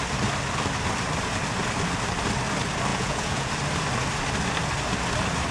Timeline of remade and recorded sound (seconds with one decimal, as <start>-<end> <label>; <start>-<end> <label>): 0.0-2.9 recorded; 2.9-3.5 remade; 3.5-5.5 recorded